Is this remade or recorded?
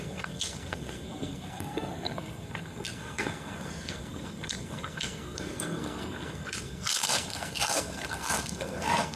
remade